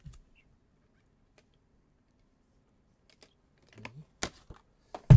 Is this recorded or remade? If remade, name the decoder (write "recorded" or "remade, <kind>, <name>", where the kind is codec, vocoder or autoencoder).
recorded